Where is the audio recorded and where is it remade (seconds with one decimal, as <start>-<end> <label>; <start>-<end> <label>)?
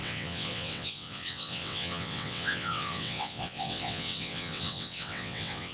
0.0-5.7 remade